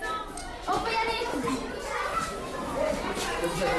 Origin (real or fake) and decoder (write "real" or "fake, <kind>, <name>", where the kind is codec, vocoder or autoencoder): real